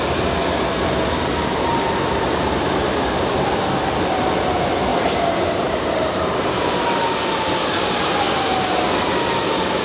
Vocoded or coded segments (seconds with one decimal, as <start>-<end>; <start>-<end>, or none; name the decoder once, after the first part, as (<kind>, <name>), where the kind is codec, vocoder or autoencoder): 1.5-3.0 (vocoder, BigVGAN v2); 4.9-6.8